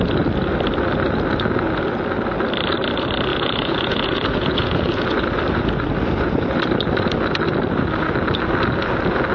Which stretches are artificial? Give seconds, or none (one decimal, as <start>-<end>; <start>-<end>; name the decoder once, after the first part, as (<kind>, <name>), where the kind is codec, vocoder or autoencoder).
3.3-5.0 (vocoder, Vocos)